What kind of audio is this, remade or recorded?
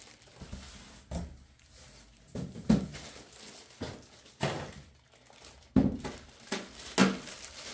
recorded